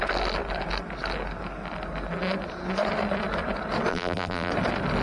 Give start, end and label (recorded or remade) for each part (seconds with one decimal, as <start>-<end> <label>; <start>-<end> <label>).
0.0-3.9 recorded; 3.9-4.5 remade; 4.5-5.0 recorded